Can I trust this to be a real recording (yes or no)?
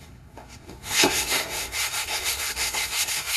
no